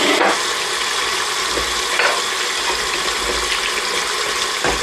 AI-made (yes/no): no